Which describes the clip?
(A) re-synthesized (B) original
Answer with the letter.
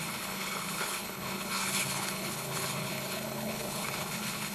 A